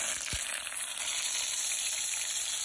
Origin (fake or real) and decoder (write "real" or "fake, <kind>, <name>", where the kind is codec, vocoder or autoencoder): real